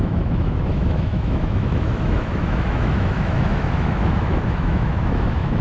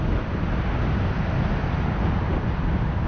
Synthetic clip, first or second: first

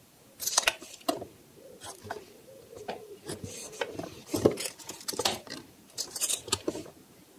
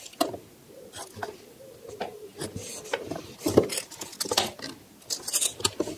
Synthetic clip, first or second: first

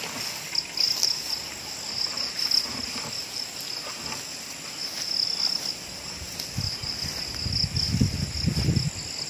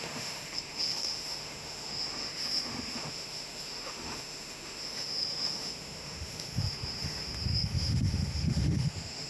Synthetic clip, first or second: second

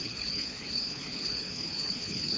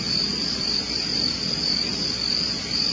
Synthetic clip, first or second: first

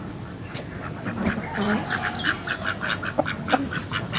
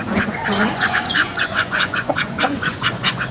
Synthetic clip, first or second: second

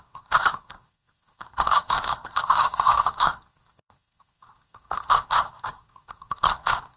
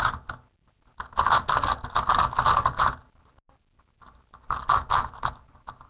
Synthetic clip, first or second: first